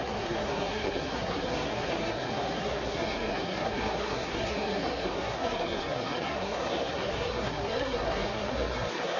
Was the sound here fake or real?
fake